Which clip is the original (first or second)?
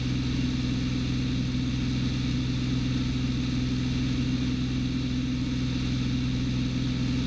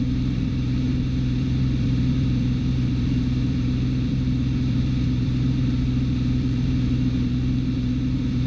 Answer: first